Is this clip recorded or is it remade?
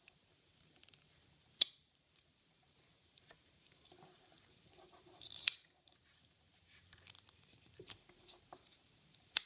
remade